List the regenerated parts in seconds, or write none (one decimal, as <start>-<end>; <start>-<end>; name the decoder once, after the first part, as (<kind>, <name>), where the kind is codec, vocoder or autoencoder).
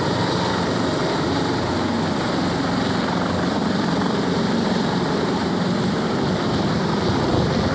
0.5-1.7 (vocoder, BigVGAN v2); 3.6-5.5